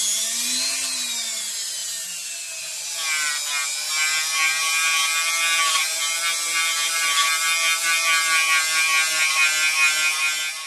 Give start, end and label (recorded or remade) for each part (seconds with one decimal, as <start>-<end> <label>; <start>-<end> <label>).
0.0-10.7 recorded